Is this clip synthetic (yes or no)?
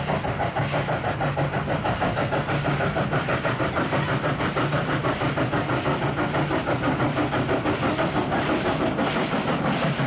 no